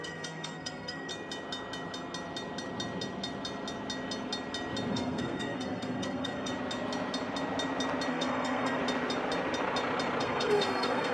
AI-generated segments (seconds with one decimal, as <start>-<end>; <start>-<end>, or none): 0.0-1.1; 4.9-6.5; 8.1-8.8; 10.2-11.1

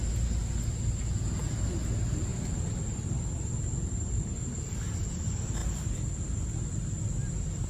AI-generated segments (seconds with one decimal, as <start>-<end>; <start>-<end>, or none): none

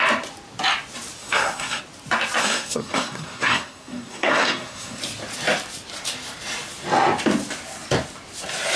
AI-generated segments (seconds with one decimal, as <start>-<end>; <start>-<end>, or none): 1.2-1.8; 2.4-5.0

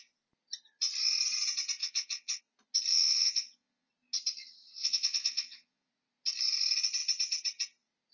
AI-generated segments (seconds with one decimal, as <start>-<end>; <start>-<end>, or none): 1.8-2.4; 2.9-3.9; 4.5-5.9